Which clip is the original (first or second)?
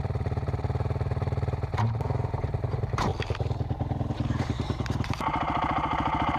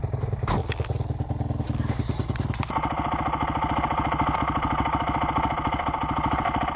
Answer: second